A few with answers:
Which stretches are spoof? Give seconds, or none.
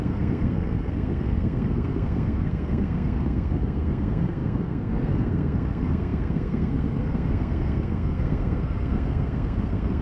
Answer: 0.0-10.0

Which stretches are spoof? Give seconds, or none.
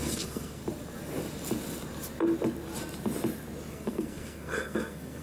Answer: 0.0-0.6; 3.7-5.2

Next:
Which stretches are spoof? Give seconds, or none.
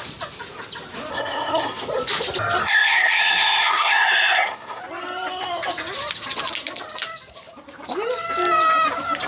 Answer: 1.1-1.8; 2.6-4.8